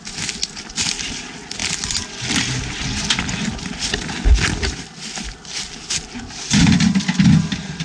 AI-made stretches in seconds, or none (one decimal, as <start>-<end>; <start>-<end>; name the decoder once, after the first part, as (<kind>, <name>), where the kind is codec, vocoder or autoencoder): none